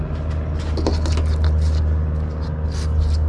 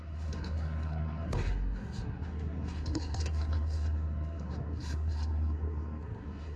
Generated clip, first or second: second